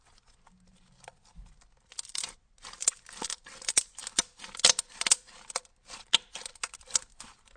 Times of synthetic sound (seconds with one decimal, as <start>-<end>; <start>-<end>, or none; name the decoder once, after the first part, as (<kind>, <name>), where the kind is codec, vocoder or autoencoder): none